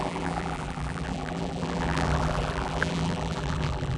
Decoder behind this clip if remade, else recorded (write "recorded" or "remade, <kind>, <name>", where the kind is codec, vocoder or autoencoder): remade, vocoder, BigVGAN v2